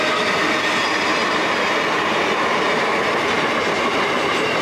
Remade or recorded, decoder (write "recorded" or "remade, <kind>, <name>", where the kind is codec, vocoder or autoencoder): recorded